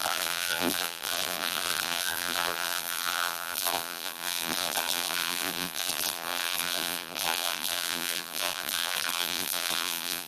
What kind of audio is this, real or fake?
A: fake